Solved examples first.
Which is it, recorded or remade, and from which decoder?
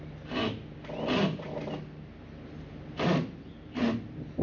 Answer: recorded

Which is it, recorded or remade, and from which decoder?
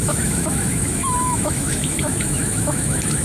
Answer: remade, autoencoder, DAC-VAE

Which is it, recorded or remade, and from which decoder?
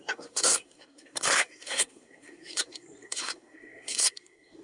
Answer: remade, codec, SNAC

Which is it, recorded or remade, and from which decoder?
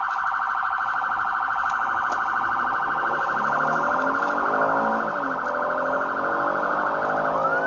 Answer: recorded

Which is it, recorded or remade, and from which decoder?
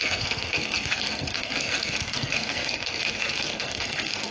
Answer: remade, codec, SNAC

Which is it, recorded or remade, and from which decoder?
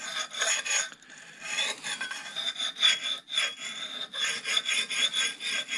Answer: recorded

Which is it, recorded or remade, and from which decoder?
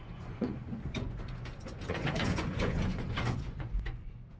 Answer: remade, vocoder, Vocos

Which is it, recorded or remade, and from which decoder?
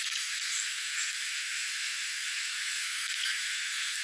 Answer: remade, codec, SNAC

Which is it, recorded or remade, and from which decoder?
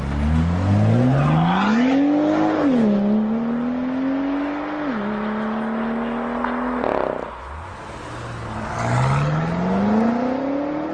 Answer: recorded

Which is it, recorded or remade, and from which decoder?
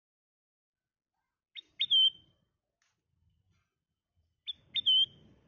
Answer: recorded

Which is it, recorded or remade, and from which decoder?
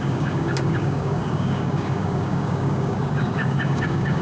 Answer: remade, codec, DAC